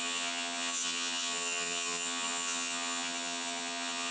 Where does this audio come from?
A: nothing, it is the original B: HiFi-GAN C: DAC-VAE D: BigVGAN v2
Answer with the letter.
B